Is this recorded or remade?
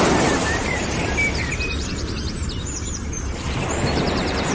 remade